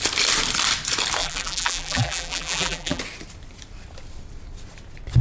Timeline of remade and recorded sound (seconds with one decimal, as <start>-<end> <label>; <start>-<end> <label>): 0.0-1.2 recorded; 1.2-3.0 remade; 3.0-5.2 recorded